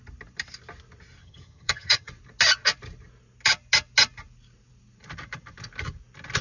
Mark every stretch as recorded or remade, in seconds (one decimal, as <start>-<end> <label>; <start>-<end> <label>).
0.0-1.2 recorded; 1.2-2.1 remade; 2.1-6.4 recorded